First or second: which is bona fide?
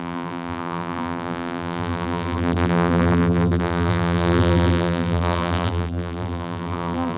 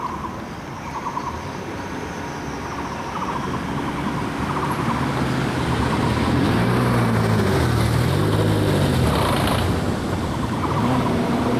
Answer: second